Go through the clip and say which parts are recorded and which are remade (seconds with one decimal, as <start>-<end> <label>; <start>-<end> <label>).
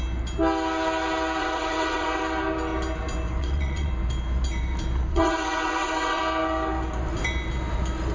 0.0-1.4 recorded; 1.4-2.2 remade; 2.2-3.4 recorded; 3.4-3.9 remade; 3.9-5.1 recorded; 5.1-6.2 remade; 6.2-8.1 recorded